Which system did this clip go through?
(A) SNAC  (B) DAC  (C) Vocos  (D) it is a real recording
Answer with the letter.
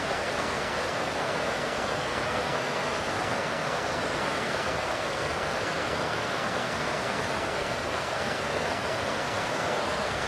A